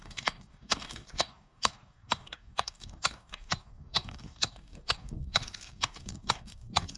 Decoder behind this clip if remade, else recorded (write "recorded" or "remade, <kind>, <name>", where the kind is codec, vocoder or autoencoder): remade, codec, DAC